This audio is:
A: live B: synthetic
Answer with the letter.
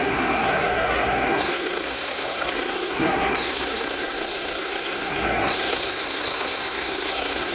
B